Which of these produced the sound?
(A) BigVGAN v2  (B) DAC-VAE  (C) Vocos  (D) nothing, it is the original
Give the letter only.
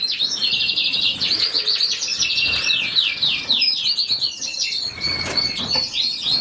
C